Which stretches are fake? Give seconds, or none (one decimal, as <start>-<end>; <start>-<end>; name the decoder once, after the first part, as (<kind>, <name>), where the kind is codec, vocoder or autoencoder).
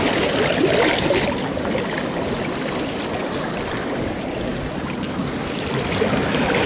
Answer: none